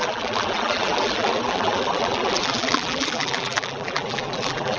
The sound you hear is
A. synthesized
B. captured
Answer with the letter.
A